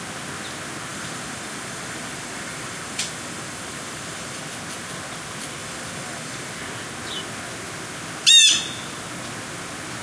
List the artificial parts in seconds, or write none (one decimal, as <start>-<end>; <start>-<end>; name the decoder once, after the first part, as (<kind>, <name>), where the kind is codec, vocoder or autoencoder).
0.9-4.4 (vocoder, BigVGAN v2); 5.6-6.5